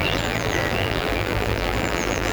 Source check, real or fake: fake